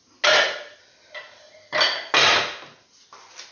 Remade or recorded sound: recorded